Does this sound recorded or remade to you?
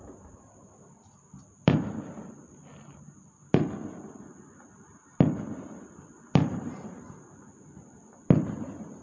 recorded